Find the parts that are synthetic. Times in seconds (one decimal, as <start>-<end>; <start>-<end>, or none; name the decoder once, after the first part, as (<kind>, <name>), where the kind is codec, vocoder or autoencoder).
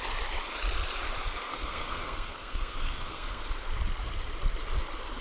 1.5-3.4 (codec, SNAC)